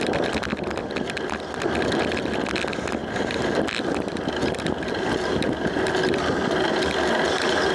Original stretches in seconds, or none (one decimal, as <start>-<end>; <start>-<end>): 0.0-7.7